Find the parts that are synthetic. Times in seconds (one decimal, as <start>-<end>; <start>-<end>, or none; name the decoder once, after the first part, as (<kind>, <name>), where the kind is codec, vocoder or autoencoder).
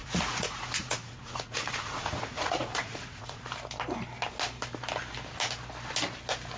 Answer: 0.0-3.4 (vocoder, Vocos)